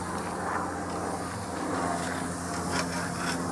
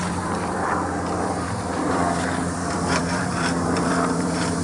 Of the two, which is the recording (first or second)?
first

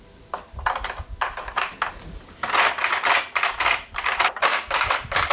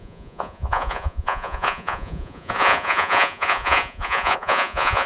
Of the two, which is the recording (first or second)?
first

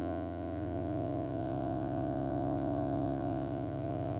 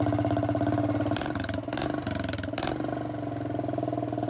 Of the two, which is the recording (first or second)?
second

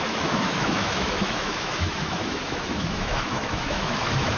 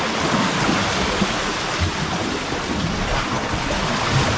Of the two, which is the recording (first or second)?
second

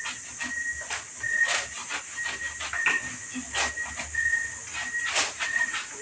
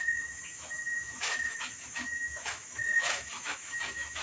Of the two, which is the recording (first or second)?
first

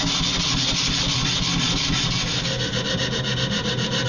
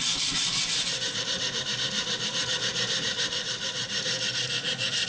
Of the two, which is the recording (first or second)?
first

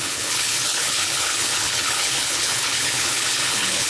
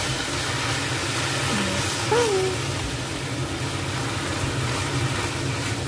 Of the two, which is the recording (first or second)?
second